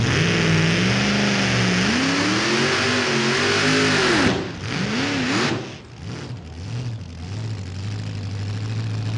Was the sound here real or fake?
real